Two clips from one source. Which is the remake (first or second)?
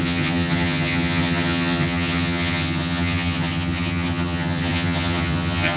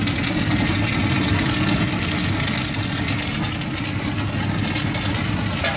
first